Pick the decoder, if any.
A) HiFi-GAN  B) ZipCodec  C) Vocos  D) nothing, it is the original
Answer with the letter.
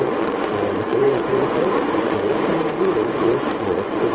C